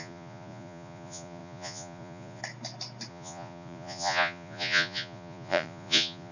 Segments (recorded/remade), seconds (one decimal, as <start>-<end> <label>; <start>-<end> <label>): 0.0-2.4 remade; 2.4-3.1 recorded; 3.1-6.3 remade